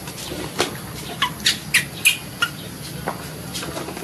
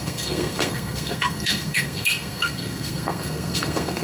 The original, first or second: first